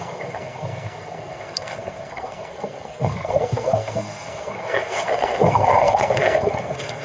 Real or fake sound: fake